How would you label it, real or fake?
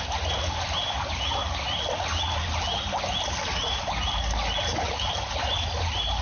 real